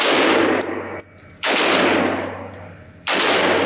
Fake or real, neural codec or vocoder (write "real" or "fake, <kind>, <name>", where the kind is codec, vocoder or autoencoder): real